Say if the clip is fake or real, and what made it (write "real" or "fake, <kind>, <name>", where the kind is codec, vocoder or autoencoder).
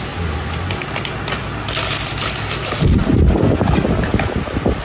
real